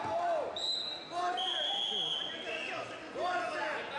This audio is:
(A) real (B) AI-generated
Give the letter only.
A